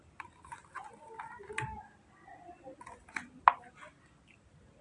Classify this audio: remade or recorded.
recorded